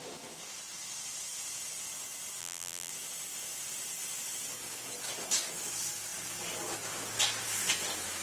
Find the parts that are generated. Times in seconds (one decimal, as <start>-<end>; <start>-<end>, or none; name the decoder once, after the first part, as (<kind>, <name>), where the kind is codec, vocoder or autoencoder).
2.4-2.9 (vocoder, BigVGAN v2)